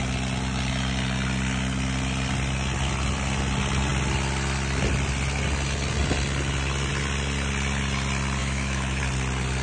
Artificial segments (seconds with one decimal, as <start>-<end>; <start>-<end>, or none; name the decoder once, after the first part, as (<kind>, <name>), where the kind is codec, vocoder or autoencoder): 8.4-9.0 (autoencoder, DAC-VAE)

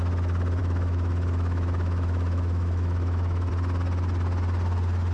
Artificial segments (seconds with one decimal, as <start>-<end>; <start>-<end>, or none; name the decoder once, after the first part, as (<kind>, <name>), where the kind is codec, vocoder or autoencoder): 0.6-3.5 (autoencoder, DAC-VAE)

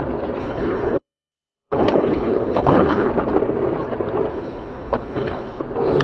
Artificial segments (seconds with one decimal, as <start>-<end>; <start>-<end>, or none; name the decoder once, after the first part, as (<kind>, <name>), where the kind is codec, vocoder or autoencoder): 0.4-3.1 (codec, HILCodec); 4.3-5.6

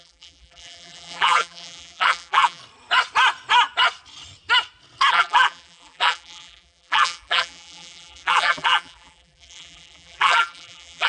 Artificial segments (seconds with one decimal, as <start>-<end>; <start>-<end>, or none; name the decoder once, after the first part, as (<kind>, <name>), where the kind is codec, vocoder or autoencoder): 0.0-2.6 (vocoder, BigVGAN v2); 5.1-11.1

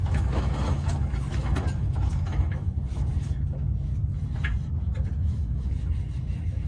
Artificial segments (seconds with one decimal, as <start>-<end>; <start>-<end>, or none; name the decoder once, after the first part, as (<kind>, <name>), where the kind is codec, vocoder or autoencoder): 0.0-3.9 (autoencoder, DAC-VAE); 5.3-6.7

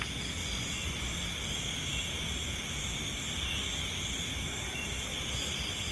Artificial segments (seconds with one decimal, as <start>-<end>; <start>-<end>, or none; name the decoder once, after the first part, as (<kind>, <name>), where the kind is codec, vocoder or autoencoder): 0.4-1.0 (vocoder, Vocos)

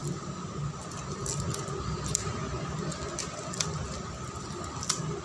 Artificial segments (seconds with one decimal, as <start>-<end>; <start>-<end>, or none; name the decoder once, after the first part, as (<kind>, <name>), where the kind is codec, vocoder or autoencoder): none